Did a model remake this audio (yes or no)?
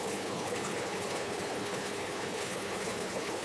yes